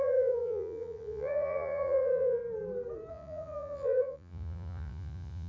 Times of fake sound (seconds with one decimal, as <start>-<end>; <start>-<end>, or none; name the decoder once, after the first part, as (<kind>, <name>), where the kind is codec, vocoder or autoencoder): 0.0-2.4 (vocoder, Vocos); 3.1-5.5